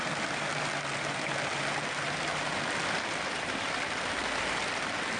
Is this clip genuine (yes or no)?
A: yes